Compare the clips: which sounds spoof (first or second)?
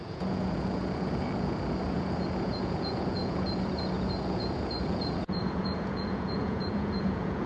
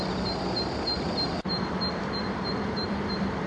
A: first